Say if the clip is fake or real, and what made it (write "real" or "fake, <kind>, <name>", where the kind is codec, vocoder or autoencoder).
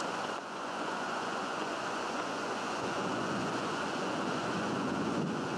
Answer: fake, vocoder, Vocos